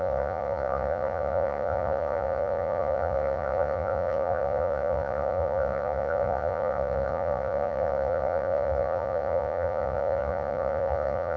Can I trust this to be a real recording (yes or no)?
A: no